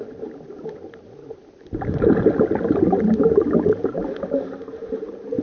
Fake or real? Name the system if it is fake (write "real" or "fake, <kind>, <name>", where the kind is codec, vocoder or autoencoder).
real